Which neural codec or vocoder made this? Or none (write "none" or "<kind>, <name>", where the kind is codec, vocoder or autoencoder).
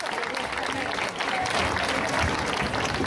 none